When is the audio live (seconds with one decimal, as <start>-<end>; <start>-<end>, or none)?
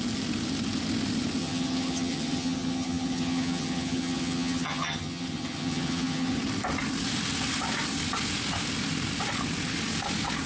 0.0-1.4; 6.4-10.5